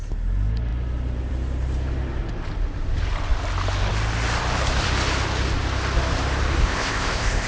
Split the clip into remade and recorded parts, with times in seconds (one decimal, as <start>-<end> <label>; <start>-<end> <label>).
0.0-6.6 recorded; 6.6-7.5 remade